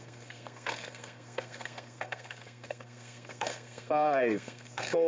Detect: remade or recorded remade